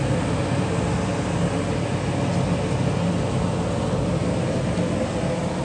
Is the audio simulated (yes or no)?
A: no